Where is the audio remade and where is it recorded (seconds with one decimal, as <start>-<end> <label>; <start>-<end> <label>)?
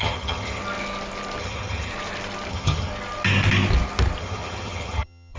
0.0-0.6 remade; 0.6-1.4 recorded; 1.4-1.9 remade; 1.9-2.5 recorded; 2.5-2.9 remade; 2.9-4.2 recorded; 4.2-5.4 remade